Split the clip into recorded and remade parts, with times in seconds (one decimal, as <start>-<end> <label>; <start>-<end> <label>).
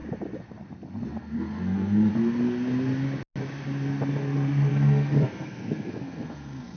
0.0-1.2 recorded; 1.2-2.1 remade; 2.1-4.7 recorded; 4.7-6.8 remade